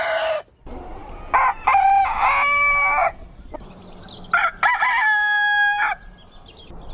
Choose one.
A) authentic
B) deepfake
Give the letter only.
A